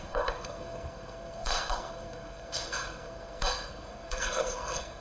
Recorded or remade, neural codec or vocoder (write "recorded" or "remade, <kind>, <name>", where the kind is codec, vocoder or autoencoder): remade, codec, SNAC